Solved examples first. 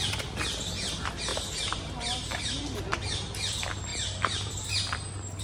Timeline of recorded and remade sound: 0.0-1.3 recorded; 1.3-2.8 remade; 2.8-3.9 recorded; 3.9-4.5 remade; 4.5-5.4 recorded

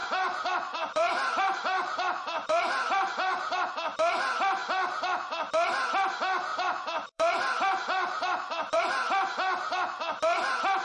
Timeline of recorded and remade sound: 0.0-3.7 remade; 3.7-6.5 recorded; 6.5-8.8 remade; 8.8-10.8 recorded

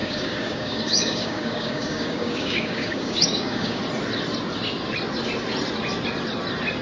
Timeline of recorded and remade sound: 0.0-3.8 remade; 3.8-6.8 recorded

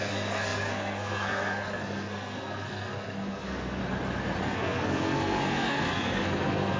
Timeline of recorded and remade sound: 0.0-3.8 remade; 3.8-4.4 recorded; 4.4-6.8 remade

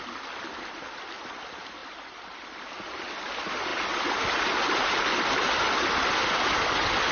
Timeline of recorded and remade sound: 0.0-1.8 recorded; 1.8-2.7 remade; 2.7-7.1 recorded

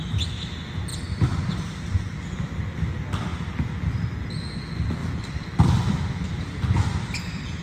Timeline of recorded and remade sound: 0.0-0.9 recorded; 0.9-2.6 remade; 2.6-3.3 recorded; 3.3-4.4 remade; 4.4-5.0 recorded; 5.0-7.6 remade

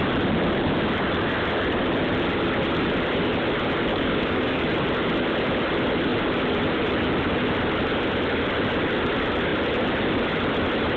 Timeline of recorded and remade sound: 0.0-3.9 recorded; 3.9-4.6 remade; 4.6-11.0 recorded

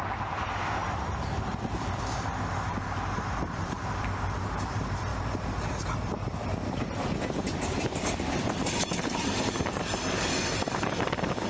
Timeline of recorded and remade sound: 0.0-2.3 remade; 2.3-2.8 recorded; 2.8-5.1 remade; 5.1-6.8 recorded; 6.8-11.5 remade